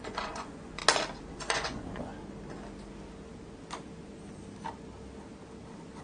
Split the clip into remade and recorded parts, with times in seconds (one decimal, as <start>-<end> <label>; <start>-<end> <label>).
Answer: 0.0-0.8 remade; 0.8-1.3 recorded; 1.3-2.1 remade; 2.1-6.0 recorded